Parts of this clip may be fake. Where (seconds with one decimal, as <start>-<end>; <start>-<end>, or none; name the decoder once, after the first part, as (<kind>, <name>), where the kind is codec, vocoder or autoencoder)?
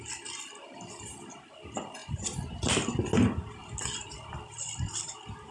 2.0-2.6 (vocoder, BigVGAN v2); 3.6-5.5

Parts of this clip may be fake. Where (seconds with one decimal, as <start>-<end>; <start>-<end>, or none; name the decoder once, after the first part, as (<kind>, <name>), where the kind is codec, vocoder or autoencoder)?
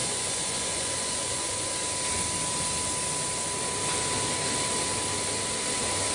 0.0-1.7 (vocoder, Vocos)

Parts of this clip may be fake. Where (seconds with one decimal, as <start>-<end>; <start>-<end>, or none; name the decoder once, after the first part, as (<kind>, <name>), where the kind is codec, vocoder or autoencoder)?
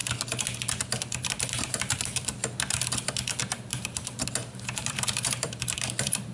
1.3-2.4 (vocoder, BigVGAN v2); 3.4-6.3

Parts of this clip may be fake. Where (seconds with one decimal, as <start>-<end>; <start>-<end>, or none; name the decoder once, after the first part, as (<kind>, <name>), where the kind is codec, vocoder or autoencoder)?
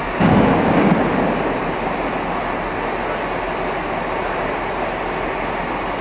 0.0-0.9 (codec, DAC)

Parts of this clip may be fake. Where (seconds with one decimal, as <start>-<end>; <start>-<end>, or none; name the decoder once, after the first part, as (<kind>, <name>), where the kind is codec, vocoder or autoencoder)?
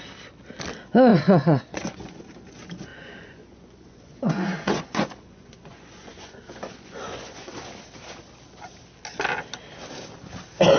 1.1-2.2 (vocoder, Vocos); 2.9-7.5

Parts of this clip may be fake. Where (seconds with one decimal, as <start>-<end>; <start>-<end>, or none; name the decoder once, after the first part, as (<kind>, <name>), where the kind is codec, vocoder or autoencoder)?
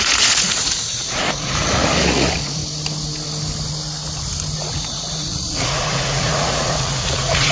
0.0-2.6 (vocoder, Vocos); 4.7-7.5